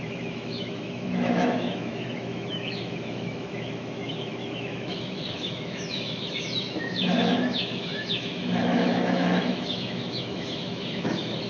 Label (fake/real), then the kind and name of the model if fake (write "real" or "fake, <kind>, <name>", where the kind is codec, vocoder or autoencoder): fake, autoencoder, DAC-VAE